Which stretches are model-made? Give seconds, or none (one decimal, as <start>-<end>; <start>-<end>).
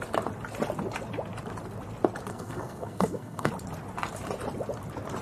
2.3-3.5